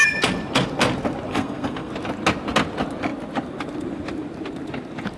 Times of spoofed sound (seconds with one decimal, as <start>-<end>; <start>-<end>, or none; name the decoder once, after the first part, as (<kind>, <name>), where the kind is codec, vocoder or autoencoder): 1.3-1.9 (codec, SNAC)